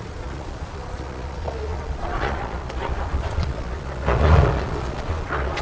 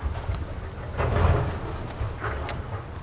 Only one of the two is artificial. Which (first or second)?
first